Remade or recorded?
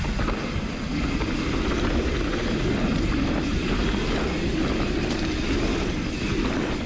recorded